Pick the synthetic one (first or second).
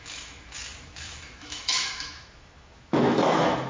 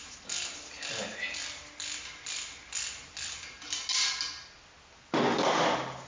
first